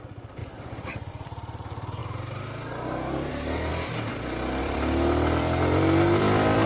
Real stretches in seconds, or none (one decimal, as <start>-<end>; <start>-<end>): 0.4-1.1; 2.0-3.3; 3.7-4.6